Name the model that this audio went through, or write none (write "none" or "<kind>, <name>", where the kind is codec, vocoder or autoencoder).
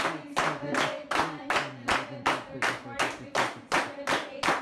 none